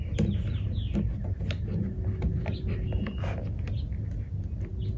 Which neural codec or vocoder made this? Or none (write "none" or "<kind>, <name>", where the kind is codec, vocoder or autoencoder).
none